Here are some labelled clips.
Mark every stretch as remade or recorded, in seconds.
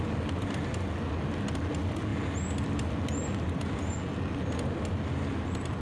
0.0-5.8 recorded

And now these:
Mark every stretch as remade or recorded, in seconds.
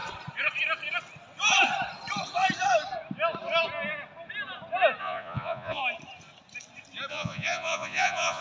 0.0-5.0 recorded; 5.0-5.8 remade; 5.8-7.1 recorded; 7.1-8.4 remade